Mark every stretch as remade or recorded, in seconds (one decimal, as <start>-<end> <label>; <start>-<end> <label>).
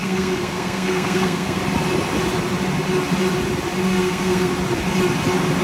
0.0-1.6 remade; 1.6-3.8 recorded; 3.8-4.5 remade; 4.5-5.6 recorded